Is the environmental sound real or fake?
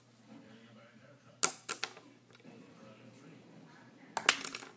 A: real